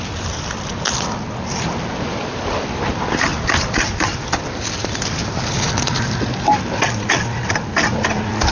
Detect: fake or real real